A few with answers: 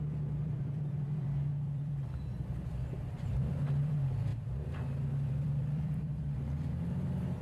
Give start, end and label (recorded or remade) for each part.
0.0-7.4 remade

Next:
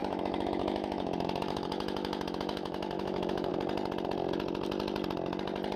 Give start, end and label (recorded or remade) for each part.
0.0-3.5 remade; 3.5-5.8 recorded

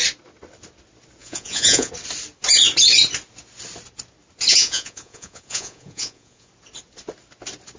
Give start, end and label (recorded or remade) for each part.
0.0-1.2 recorded; 1.2-1.9 remade; 1.9-4.5 recorded; 4.5-6.5 remade; 6.5-7.8 recorded

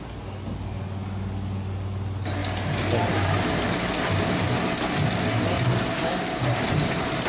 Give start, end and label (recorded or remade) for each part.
0.0-7.3 recorded

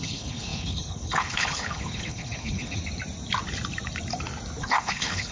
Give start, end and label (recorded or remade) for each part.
0.0-2.8 remade; 2.8-4.6 recorded; 4.6-5.3 remade